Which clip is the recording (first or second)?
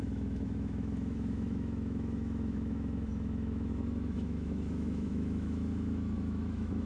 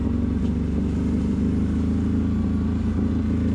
second